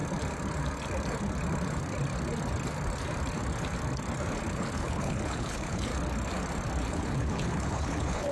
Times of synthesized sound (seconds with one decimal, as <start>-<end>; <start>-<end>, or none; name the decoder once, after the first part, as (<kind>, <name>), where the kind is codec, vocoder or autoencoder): 4.5-5.9 (codec, HILCodec); 6.9-8.3